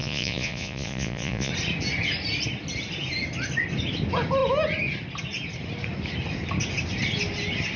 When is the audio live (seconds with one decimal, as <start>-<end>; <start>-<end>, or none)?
1.5-7.8